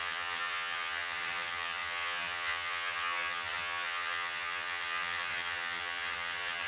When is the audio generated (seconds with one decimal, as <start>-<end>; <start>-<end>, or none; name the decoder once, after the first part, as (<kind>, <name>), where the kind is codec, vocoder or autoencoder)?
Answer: 0.0-6.7 (vocoder, HiFi-GAN)